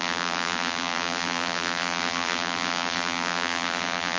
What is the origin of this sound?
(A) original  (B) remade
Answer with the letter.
B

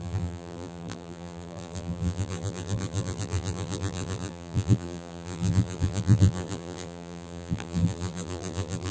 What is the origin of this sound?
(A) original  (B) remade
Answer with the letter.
B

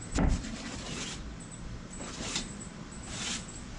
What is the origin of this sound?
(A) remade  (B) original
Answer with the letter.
A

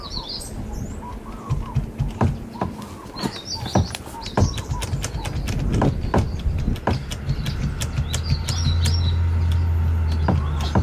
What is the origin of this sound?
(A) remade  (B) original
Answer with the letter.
B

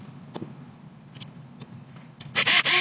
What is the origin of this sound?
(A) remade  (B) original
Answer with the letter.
B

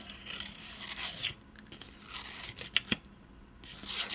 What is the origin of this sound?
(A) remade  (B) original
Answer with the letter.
B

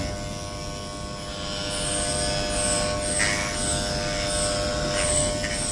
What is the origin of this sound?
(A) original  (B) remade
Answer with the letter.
A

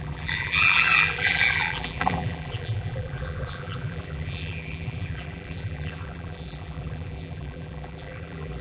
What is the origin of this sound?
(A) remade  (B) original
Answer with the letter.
A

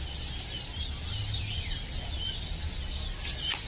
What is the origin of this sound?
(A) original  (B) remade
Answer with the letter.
A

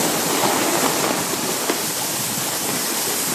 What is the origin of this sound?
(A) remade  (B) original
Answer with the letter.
B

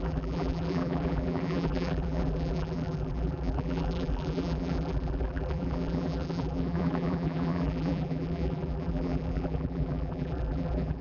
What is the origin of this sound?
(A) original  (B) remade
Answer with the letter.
B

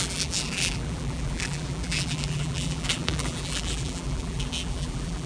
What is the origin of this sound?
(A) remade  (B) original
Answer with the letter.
A